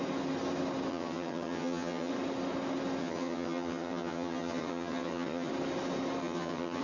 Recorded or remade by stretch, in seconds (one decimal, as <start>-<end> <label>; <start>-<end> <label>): 0.0-0.9 recorded; 0.9-2.1 remade; 2.1-3.0 recorded; 3.0-5.5 remade; 5.5-6.2 recorded; 6.2-6.8 remade

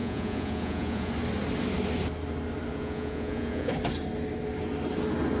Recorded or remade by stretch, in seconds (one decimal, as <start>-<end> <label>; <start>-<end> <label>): 0.0-1.1 remade; 1.1-2.7 recorded; 2.7-3.7 remade; 3.7-5.4 recorded

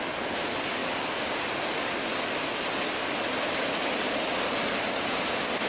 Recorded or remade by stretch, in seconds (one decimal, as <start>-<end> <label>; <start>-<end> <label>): 0.0-5.7 recorded

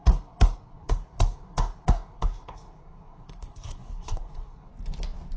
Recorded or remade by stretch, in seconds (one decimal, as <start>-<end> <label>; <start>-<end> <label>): 0.0-4.7 remade; 4.7-5.4 recorded

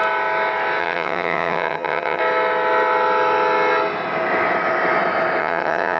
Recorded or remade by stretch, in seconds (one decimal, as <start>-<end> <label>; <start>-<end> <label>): 0.0-0.8 recorded; 0.8-2.2 remade; 2.2-5.4 recorded; 5.4-6.0 remade

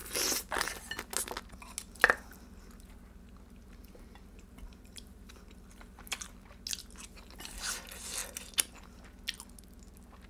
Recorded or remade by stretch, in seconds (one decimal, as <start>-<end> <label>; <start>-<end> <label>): 0.0-3.8 recorded; 3.8-5.4 remade; 5.4-10.3 recorded

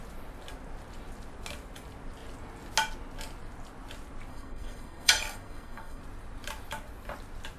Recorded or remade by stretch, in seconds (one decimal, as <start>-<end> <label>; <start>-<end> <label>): 0.0-4.3 recorded; 4.3-6.0 remade; 6.0-7.6 recorded

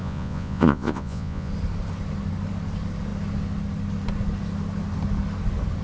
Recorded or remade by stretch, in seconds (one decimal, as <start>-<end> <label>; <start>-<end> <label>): 0.0-1.5 remade; 1.5-5.8 recorded